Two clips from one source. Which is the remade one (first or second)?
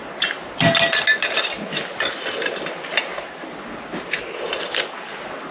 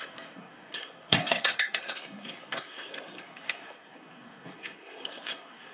second